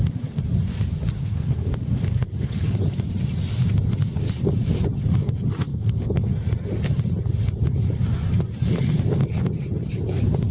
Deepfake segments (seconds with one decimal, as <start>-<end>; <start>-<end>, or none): 1.2-1.7; 5.7-6.3